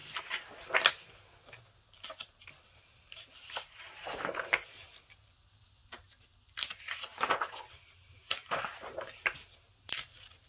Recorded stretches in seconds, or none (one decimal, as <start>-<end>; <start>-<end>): 0.0-10.5